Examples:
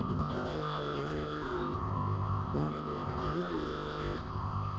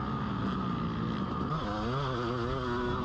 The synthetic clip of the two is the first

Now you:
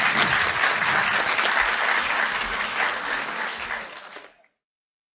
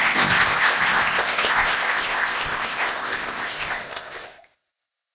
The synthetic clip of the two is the second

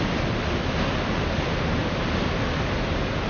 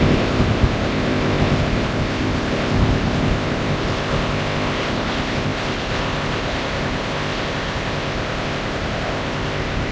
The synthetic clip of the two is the second